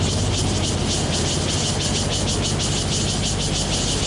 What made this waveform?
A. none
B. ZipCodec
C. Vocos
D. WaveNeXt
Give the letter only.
A